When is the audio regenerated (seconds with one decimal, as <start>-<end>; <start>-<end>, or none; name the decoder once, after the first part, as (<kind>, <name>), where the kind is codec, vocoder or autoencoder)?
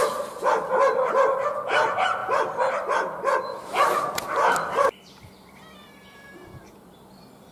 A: 0.0-7.5 (vocoder, BigVGAN v2)